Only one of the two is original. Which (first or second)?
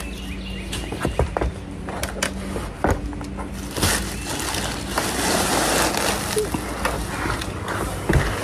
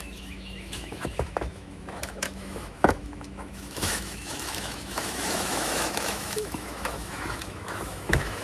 first